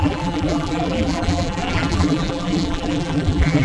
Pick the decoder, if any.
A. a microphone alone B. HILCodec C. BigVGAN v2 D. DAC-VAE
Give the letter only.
C